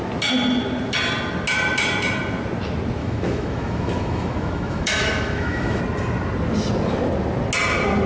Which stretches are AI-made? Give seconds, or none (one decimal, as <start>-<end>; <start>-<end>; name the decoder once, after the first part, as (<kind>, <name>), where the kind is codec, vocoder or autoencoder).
3.0-5.8 (autoencoder, DAC-VAE)